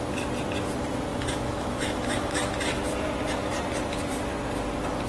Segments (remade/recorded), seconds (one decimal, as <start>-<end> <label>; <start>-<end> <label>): 0.0-1.1 recorded; 1.1-2.5 remade; 2.5-5.1 recorded